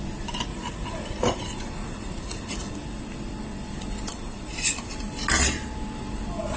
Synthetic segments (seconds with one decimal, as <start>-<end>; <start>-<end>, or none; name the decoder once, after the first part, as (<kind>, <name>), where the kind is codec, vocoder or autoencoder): 0.5-2.7 (vocoder, Vocos); 4.1-4.9